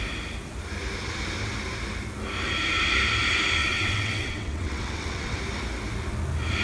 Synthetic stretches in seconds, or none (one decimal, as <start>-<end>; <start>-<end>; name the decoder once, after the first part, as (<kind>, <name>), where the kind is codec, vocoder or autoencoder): 3.6-5.4 (vocoder, WaveNeXt)